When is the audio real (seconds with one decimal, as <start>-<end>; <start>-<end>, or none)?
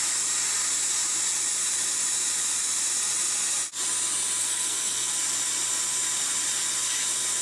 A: 0.0-4.4; 5.1-7.4